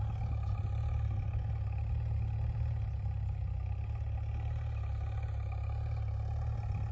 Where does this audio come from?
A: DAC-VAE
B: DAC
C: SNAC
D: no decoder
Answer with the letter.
D